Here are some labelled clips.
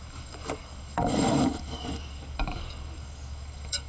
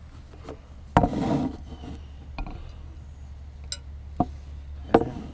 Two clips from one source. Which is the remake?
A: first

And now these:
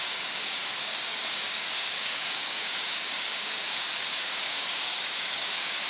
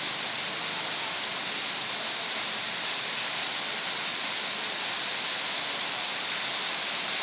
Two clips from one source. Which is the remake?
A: first